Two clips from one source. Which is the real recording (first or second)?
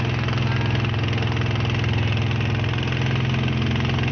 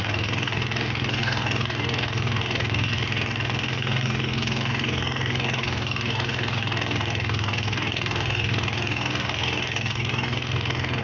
first